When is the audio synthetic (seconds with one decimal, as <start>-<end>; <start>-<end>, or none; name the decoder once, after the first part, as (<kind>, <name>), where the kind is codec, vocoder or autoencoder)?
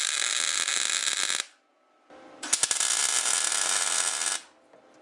none